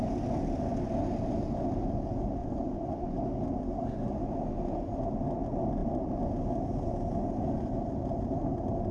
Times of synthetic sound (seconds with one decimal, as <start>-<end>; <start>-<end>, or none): 2.4-3.3